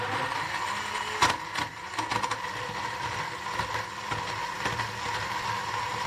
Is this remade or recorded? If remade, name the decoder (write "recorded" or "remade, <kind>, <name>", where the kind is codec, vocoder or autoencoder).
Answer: recorded